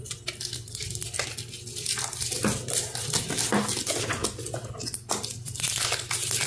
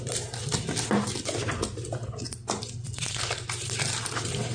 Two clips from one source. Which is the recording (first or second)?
first